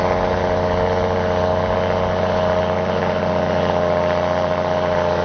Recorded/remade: recorded